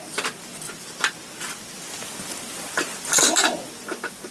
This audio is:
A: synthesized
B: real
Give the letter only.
B